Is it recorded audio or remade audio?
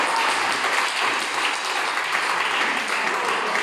recorded